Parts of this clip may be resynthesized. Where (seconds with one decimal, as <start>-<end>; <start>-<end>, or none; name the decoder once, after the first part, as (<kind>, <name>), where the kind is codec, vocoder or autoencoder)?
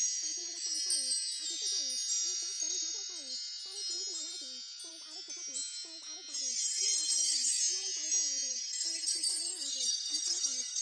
6.6-7.6 (codec, SNAC); 8.5-10.8